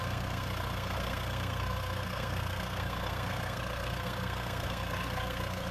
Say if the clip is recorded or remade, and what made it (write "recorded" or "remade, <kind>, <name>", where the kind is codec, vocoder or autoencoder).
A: remade, codec, SNAC